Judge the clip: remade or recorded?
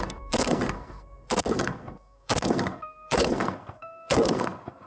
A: remade